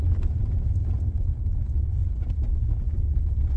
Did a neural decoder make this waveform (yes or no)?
no